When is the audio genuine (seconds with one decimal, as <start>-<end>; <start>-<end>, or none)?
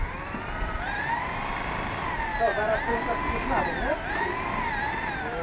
0.0-5.4